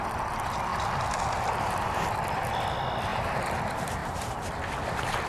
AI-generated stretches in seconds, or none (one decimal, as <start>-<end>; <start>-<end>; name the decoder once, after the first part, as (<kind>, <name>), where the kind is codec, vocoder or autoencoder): 3.1-3.6 (vocoder, BigVGAN v2); 4.0-4.5